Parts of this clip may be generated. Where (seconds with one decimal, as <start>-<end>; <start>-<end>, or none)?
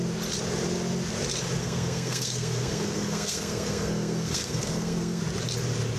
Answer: 1.6-5.2